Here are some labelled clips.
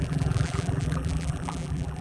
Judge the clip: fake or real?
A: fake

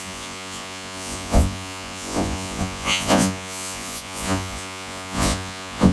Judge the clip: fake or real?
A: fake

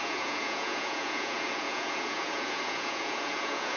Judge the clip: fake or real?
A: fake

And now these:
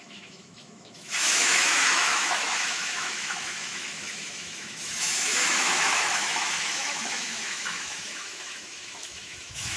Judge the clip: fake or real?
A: fake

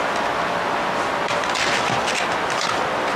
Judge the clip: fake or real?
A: real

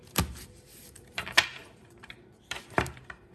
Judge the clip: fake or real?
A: fake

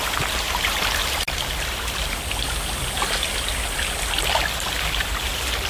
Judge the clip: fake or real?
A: real